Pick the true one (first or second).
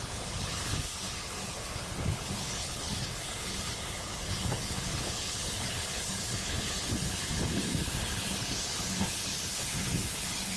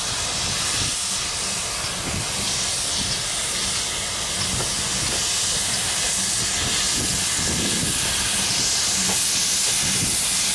second